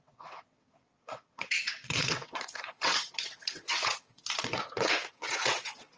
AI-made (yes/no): yes